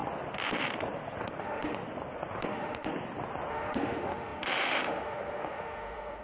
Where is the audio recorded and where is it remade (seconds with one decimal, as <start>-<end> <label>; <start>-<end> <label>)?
0.0-1.4 recorded; 1.4-1.8 remade; 1.8-2.5 recorded; 2.5-2.9 remade; 2.9-3.5 recorded; 3.5-6.2 remade